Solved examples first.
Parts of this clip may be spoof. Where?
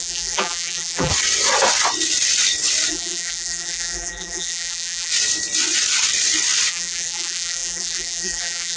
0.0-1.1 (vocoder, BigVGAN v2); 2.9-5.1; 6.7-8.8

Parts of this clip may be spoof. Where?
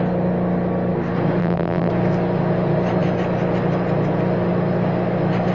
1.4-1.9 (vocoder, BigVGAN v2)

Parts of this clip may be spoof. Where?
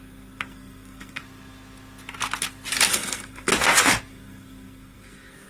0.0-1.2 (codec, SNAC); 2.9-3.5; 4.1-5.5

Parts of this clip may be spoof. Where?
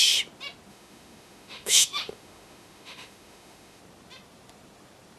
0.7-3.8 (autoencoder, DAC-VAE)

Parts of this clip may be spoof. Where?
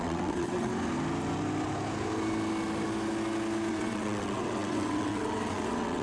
0.0-0.7 (vocoder, WaveNeXt); 3.7-6.0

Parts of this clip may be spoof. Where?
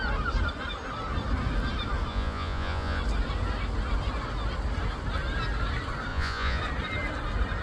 2.1-3.0 (vocoder, Vocos); 6.1-6.6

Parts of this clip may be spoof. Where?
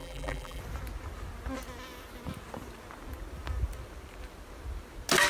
0.0-0.6 (vocoder, BigVGAN v2)